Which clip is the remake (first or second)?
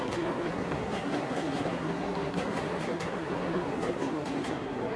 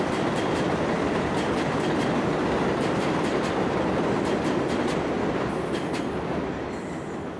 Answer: first